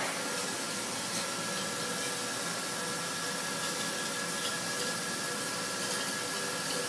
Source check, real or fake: real